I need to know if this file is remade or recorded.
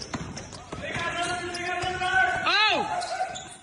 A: remade